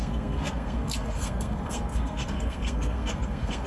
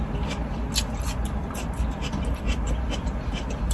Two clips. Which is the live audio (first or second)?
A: second